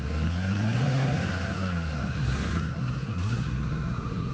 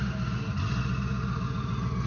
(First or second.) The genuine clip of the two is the second